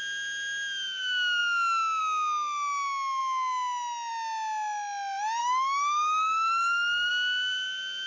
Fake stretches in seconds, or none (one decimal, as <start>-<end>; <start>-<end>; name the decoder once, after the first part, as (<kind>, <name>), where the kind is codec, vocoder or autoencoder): 5.4-7.1 (codec, DAC)